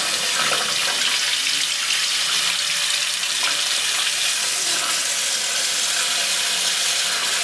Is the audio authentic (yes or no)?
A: yes